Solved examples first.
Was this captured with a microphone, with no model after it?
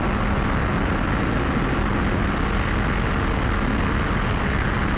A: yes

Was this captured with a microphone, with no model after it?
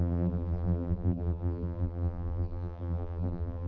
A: no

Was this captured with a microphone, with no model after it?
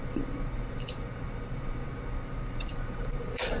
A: no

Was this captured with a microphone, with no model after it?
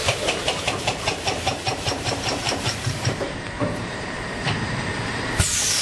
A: no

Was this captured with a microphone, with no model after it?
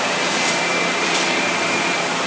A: no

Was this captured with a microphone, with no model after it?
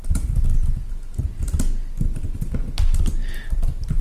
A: yes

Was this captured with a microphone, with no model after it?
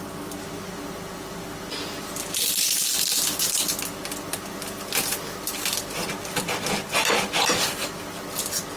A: yes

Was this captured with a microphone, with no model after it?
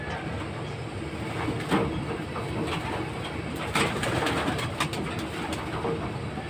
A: yes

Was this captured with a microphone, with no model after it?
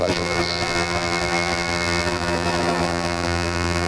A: no